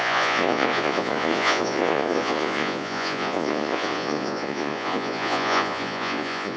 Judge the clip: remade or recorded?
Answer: remade